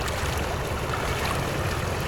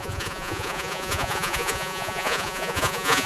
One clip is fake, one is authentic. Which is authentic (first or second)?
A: first